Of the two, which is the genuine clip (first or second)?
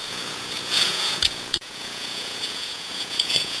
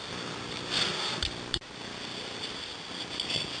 second